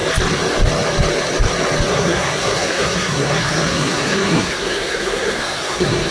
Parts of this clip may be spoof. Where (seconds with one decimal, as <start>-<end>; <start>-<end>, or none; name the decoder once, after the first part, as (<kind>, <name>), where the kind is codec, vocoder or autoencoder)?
1.9-6.1 (codec, SNAC)